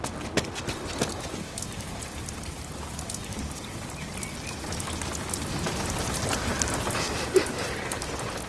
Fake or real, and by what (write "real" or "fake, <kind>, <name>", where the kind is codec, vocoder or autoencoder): real